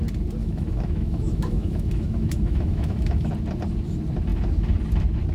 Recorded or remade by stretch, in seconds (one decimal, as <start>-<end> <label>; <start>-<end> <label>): 0.0-0.4 recorded; 0.4-3.3 remade; 3.3-5.3 recorded